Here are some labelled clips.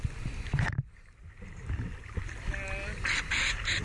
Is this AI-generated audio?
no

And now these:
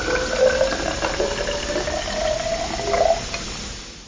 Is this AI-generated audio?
no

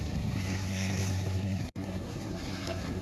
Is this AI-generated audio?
yes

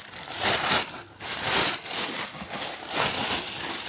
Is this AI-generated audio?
no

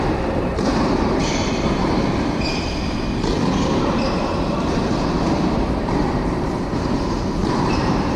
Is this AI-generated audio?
yes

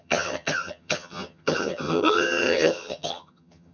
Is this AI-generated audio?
yes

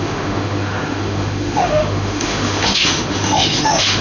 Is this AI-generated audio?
yes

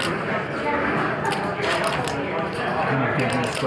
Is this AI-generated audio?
no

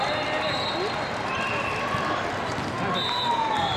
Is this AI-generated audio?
no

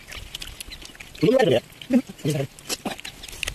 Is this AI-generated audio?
no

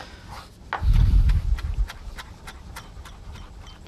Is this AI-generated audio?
no